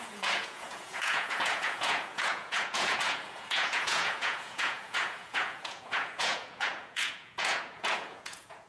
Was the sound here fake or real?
fake